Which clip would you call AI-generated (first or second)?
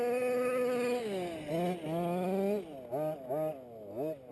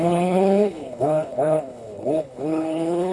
second